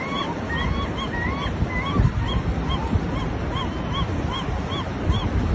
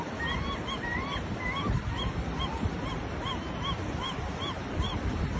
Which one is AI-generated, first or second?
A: second